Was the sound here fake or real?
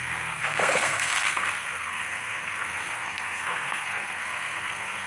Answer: fake